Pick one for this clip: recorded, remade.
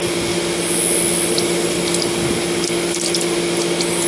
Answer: recorded